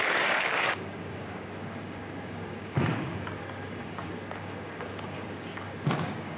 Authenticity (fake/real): fake